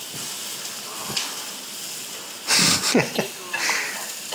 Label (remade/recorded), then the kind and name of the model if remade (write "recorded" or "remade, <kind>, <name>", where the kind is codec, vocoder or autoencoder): recorded